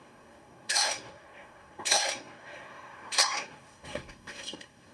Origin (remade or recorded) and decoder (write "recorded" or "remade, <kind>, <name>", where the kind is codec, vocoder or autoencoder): remade, codec, SNAC